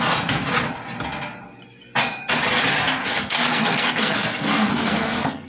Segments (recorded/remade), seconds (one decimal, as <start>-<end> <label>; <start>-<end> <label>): 0.0-3.0 recorded; 3.0-5.5 remade